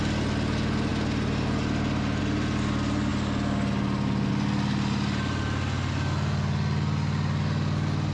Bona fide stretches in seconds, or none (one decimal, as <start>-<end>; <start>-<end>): 0.0-8.1